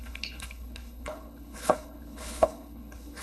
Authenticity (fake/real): fake